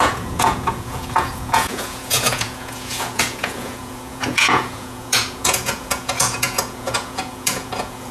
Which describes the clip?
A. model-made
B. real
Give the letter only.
A